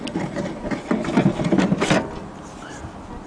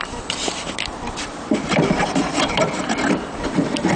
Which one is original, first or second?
first